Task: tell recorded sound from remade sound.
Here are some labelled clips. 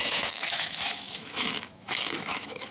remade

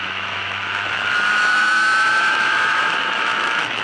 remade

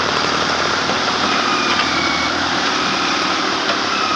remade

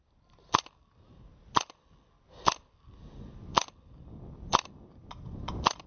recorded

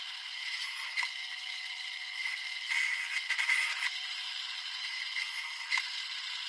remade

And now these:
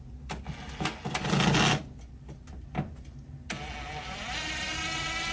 recorded